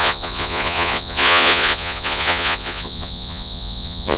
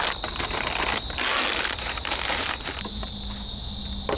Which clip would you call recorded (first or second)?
second